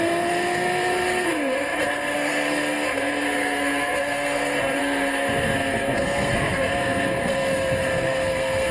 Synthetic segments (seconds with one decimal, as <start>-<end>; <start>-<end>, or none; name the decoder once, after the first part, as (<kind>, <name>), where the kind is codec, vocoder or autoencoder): 0.0-8.7 (codec, SNAC)